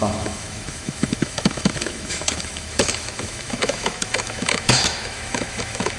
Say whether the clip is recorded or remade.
remade